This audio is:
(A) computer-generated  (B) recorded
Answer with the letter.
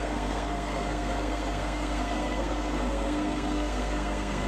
A